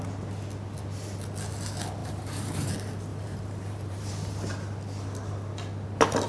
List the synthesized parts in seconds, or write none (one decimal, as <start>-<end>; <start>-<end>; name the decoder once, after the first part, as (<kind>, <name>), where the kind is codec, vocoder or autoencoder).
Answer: 2.0-2.7 (vocoder, BigVGAN v2); 3.1-4.1